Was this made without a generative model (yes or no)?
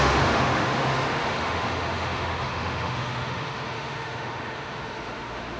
no